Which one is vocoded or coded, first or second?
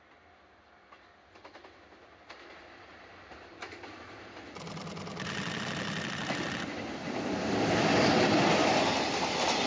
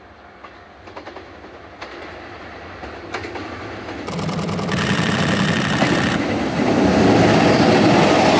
first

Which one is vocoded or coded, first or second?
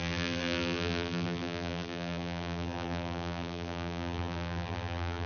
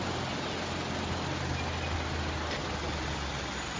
first